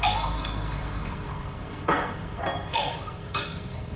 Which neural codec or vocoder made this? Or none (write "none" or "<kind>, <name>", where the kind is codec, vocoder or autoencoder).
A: codec, SNAC